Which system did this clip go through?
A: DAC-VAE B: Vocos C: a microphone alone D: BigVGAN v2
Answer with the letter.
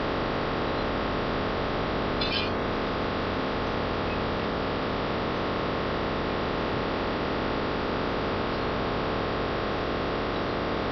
C